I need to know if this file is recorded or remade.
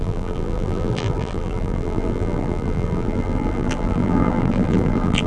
remade